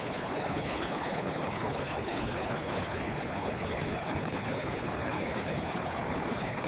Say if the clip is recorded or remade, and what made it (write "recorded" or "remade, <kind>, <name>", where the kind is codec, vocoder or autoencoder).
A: remade, codec, HILCodec